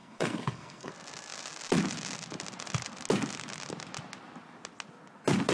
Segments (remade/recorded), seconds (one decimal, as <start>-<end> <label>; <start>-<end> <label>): 0.0-0.9 remade; 0.9-5.5 recorded